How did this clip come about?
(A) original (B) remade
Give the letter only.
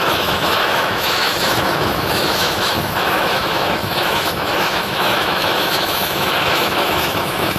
B